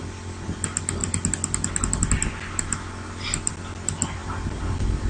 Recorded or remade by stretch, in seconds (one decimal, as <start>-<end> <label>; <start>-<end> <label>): 0.0-5.1 recorded